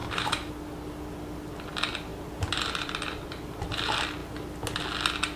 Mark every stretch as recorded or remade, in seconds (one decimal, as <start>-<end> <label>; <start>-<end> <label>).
0.0-0.5 remade; 0.5-5.4 recorded